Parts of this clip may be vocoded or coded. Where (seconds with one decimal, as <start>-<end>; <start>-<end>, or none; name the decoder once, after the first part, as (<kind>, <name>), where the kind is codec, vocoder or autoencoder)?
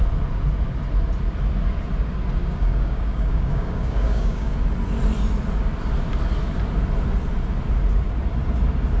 2.4-4.5 (codec, DAC)